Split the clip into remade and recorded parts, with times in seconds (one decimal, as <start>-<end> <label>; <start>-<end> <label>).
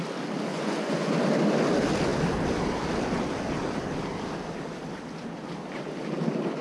0.0-0.5 recorded; 0.5-1.1 remade; 1.1-6.6 recorded